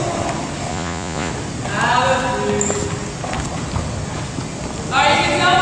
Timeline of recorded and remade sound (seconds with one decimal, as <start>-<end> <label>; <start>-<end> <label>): 0.0-0.7 recorded; 0.7-1.3 remade; 1.3-5.6 recorded